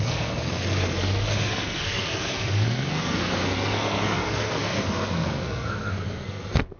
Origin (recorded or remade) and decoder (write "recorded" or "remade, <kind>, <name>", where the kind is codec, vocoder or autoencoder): remade, codec, SNAC